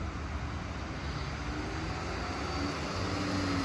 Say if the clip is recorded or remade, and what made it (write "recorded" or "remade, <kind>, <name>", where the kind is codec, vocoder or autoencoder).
recorded